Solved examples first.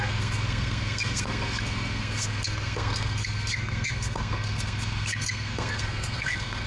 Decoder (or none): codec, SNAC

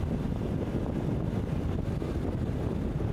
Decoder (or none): none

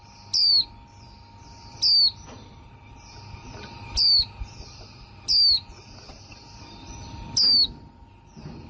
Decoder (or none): none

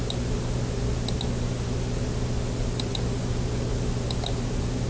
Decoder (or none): none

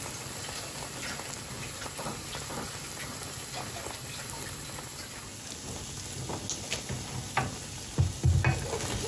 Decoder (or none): none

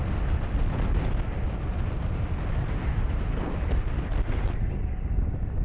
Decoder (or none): none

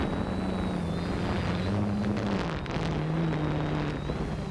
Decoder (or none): none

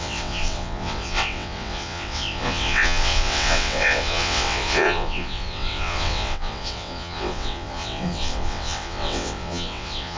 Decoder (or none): vocoder, WaveNeXt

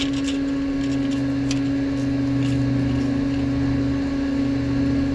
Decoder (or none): none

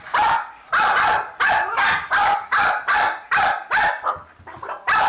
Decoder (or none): none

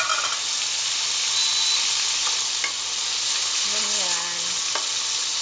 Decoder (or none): none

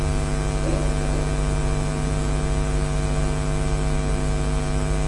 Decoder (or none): none